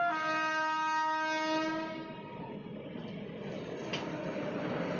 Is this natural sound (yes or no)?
yes